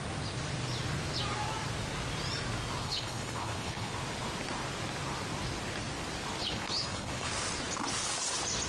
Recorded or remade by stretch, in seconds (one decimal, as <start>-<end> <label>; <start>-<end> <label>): 0.0-2.8 recorded; 2.8-3.9 remade; 3.9-6.4 recorded; 6.4-7.3 remade; 7.3-8.7 recorded